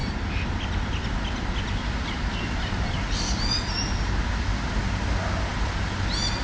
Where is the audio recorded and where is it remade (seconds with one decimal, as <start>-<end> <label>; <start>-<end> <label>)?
0.0-6.4 recorded